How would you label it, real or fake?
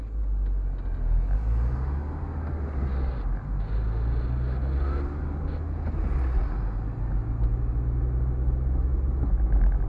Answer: real